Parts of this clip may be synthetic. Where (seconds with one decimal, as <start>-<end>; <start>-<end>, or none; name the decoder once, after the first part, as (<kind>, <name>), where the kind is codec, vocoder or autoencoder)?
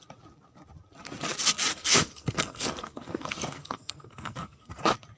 1.7-4.8 (codec, SNAC)